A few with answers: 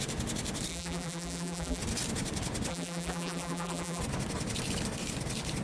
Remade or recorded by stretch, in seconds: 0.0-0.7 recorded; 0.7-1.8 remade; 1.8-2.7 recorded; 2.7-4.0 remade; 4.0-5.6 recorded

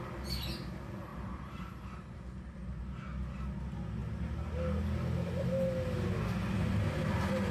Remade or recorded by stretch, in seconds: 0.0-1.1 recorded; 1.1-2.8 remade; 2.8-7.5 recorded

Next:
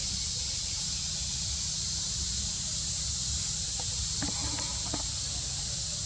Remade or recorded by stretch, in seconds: 0.0-3.5 recorded; 3.5-4.4 remade; 4.4-5.0 recorded; 5.0-6.1 remade

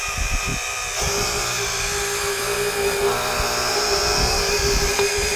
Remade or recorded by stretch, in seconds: 0.0-0.5 remade; 0.5-3.7 recorded; 3.7-5.4 remade

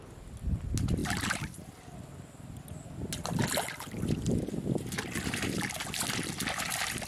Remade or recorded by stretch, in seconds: 0.0-1.0 recorded; 1.0-1.7 remade; 1.7-7.1 recorded

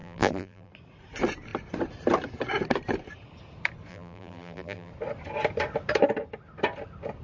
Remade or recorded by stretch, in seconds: 0.0-0.7 remade; 0.7-3.9 recorded; 3.9-4.9 remade; 4.9-7.2 recorded

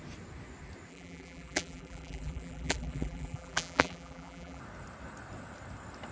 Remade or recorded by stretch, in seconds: 0.0-0.9 recorded; 0.9-4.6 remade; 4.6-6.1 recorded